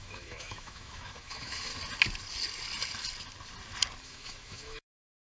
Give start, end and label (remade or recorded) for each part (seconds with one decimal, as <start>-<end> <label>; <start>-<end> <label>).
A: 0.0-1.7 remade; 1.7-4.0 recorded; 4.0-5.4 remade